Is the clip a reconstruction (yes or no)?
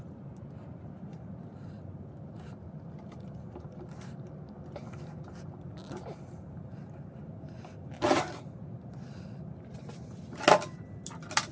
no